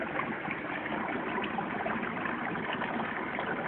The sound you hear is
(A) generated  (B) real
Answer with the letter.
B